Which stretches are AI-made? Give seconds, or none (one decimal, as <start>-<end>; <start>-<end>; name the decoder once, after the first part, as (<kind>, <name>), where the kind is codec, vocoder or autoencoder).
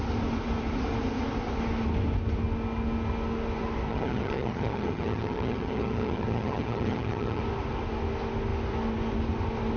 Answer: 3.9-7.4 (vocoder, HiFi-GAN)